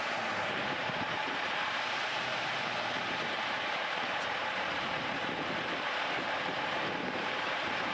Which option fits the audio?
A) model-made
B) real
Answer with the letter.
A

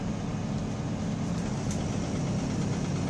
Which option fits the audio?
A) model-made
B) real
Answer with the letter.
B